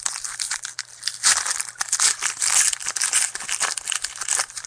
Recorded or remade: remade